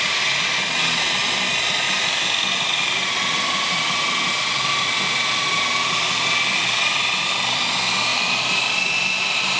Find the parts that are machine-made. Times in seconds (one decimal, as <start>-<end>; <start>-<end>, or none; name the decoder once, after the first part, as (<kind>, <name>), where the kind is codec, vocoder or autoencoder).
none